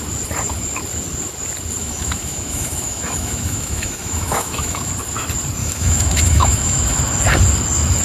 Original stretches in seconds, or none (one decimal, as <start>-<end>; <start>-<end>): 0.0-1.8; 4.9-5.6; 7.0-8.0